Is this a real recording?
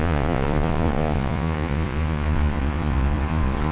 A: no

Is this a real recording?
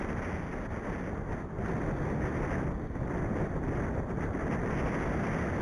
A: yes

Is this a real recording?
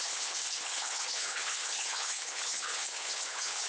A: no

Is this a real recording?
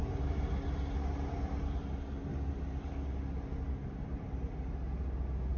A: yes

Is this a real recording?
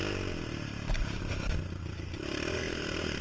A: yes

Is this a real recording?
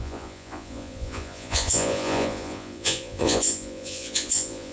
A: no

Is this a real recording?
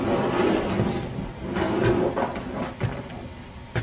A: yes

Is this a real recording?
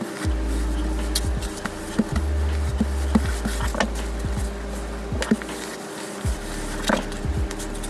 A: yes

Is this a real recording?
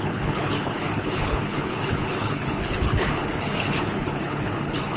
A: no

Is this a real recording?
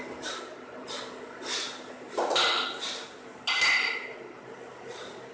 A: yes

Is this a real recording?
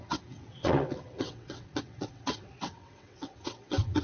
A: no